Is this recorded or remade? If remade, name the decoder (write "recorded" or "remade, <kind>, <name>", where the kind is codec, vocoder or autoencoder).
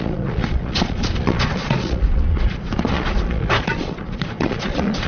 remade, vocoder, Vocos